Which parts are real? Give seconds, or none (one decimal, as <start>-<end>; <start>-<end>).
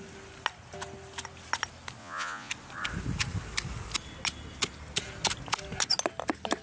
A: 0.0-2.0; 2.5-6.6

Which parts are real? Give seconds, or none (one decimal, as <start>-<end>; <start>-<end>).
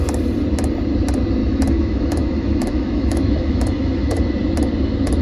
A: 0.0-1.4; 4.2-5.2